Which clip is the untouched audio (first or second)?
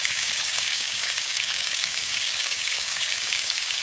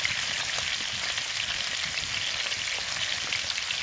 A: second